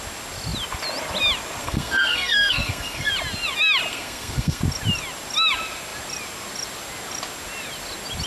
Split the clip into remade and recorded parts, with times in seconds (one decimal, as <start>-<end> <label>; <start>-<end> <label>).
0.0-1.6 recorded; 1.6-3.1 remade; 3.1-3.9 recorded; 3.9-4.6 remade; 4.6-8.3 recorded